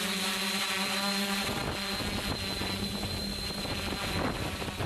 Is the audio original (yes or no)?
yes